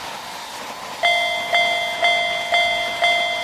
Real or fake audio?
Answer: real